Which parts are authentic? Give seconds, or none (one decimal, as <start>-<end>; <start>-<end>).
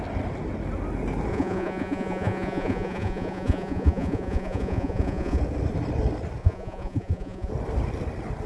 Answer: 0.0-1.3; 5.4-6.4; 7.5-8.5